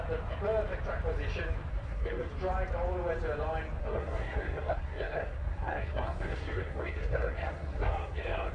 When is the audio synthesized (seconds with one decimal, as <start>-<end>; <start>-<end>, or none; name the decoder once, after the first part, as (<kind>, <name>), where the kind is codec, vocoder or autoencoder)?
1.7-2.3 (codec, SNAC); 3.8-8.5